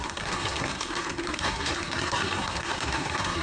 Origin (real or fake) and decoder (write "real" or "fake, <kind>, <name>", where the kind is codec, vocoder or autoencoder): fake, codec, SNAC